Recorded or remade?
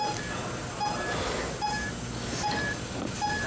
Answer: recorded